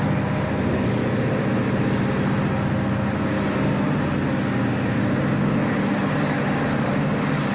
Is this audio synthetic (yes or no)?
no